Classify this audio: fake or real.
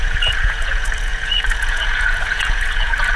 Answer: fake